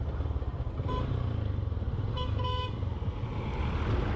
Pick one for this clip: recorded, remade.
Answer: recorded